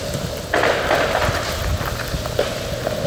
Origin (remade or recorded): recorded